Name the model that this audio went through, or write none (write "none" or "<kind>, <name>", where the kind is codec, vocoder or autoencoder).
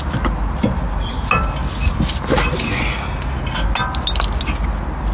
none